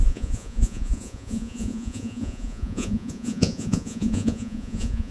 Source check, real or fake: fake